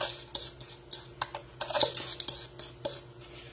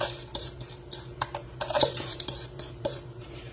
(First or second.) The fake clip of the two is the second